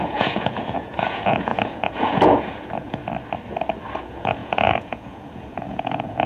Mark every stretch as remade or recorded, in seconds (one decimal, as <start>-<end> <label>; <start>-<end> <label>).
0.0-3.0 remade; 3.0-4.0 recorded; 4.0-6.3 remade